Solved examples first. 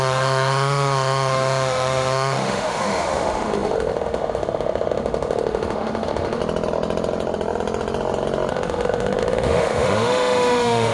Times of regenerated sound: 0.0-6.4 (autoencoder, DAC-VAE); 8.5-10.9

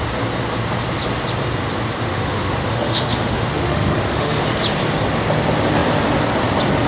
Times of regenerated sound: 2.0-4.4 (autoencoder, DAC-VAE)

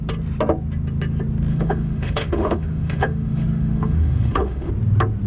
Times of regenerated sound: 1.5-4.7 (autoencoder, DAC-VAE)

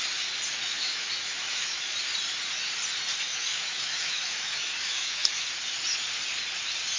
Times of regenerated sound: 0.6-1.9 (autoencoder, DAC-VAE); 3.3-5.5

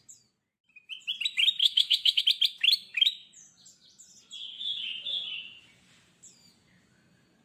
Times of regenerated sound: 1.6-2.2 (autoencoder, DAC-VAE)

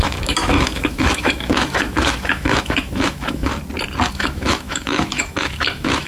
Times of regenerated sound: 0.0-3.5 (autoencoder, DAC-VAE); 4.1-6.1

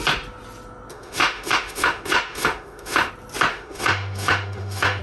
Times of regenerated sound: 0.9-3.1 (autoencoder, DAC-VAE); 3.5-5.0

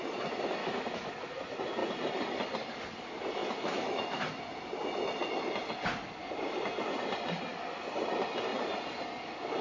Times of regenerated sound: 0.6-1.1 (autoencoder, DAC-VAE); 3.4-4.4